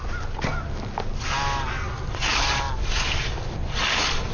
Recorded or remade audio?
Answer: recorded